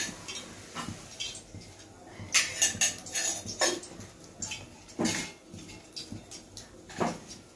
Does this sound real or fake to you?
real